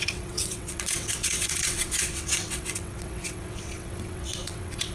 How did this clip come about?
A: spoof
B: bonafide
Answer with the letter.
A